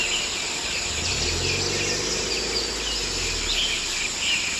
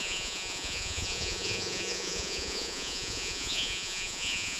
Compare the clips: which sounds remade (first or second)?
second